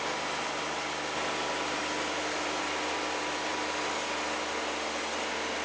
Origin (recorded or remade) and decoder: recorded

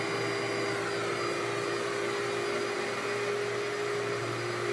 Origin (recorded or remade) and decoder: recorded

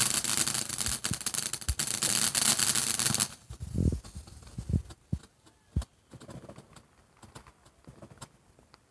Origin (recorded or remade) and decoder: recorded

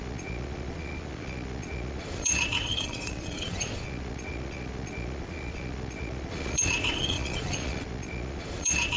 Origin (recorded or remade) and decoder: remade, vocoder, Vocos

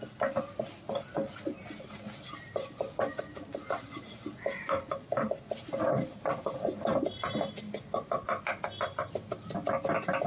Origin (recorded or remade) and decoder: recorded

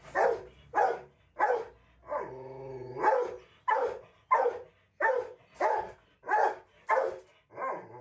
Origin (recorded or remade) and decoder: recorded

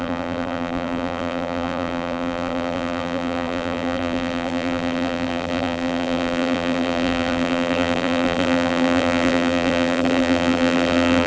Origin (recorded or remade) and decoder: remade, vocoder, BigVGAN v2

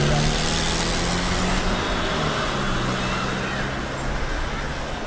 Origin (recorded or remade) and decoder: recorded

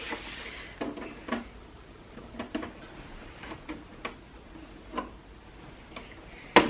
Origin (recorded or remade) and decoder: recorded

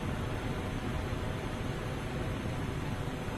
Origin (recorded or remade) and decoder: recorded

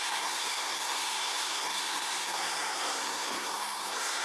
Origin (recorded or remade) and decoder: remade, codec, SNAC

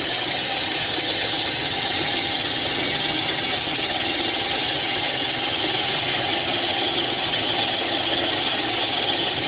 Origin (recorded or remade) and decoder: remade, vocoder, HiFi-GAN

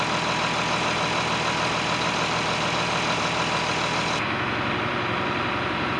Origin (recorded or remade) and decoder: recorded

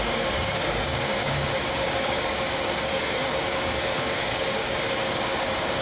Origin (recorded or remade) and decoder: remade, codec, DAC